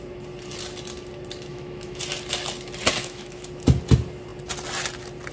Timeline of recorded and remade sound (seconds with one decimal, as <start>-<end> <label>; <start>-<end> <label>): 0.0-1.5 recorded; 1.5-2.0 remade; 2.0-3.0 recorded; 3.0-3.5 remade; 3.5-5.3 recorded